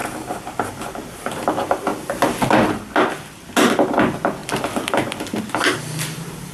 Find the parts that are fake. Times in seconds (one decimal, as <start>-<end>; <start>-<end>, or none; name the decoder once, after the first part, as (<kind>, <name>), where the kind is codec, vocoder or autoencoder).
0.0-0.7 (vocoder, BigVGAN v2)